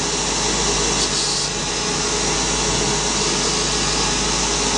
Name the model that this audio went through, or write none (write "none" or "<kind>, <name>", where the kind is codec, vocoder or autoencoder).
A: none